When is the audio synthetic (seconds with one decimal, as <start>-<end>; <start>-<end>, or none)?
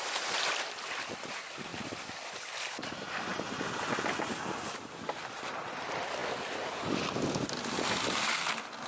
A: none